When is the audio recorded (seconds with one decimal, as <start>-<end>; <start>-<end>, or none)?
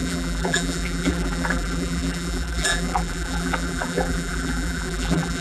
none